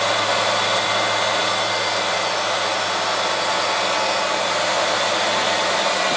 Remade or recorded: recorded